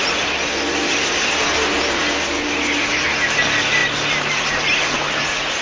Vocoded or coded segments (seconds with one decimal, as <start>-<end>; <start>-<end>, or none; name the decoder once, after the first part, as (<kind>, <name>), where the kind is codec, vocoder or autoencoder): none